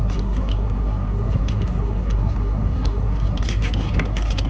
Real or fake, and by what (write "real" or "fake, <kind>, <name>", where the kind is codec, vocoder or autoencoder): fake, codec, SNAC